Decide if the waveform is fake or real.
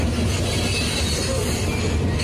real